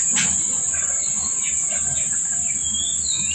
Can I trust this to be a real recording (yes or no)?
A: yes